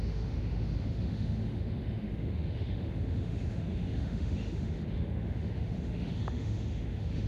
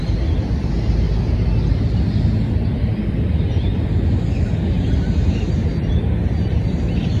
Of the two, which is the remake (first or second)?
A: first